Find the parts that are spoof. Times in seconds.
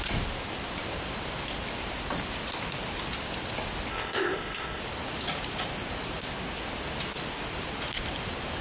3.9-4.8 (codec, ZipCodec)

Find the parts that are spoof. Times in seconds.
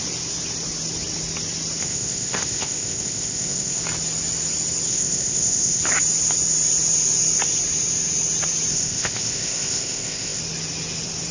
1.8-3.8 (codec, ZipCodec); 4.9-5.8; 8.7-10.4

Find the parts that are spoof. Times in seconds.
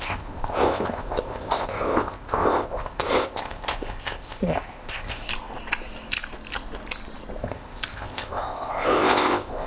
0.0-5.3 (codec, ZipCodec); 7.4-9.7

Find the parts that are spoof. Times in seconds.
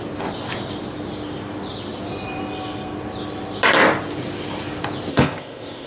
5.1-5.9 (codec, ZipCodec)